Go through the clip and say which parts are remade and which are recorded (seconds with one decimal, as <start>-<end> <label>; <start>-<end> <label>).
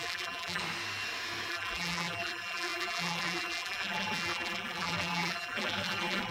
0.0-0.6 remade; 0.6-1.5 recorded; 1.5-6.3 remade